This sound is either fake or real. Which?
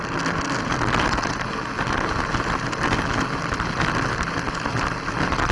real